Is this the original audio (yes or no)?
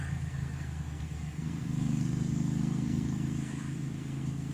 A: no